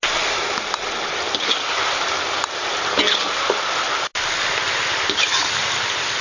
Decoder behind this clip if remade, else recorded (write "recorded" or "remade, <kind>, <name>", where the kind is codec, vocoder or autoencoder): recorded